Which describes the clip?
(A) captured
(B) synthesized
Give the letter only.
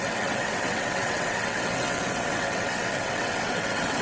B